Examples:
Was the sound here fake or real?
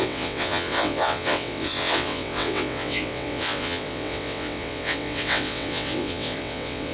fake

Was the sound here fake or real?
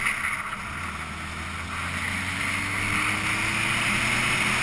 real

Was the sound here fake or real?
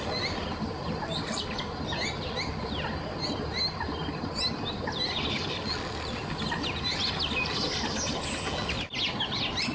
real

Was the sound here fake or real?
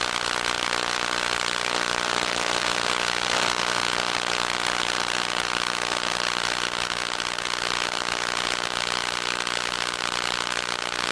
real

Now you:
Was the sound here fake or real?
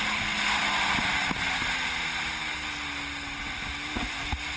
real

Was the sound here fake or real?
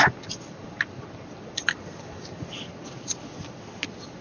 real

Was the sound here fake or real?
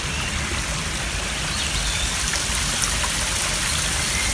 real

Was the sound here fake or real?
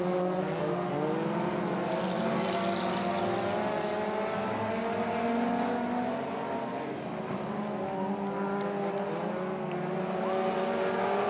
real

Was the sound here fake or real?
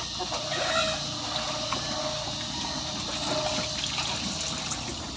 real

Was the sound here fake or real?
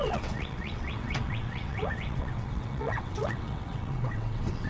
fake